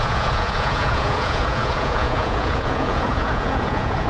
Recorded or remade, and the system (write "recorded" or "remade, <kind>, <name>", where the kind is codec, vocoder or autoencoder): remade, vocoder, Vocos